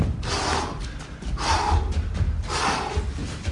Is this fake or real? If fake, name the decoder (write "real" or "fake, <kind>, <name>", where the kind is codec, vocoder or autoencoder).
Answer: real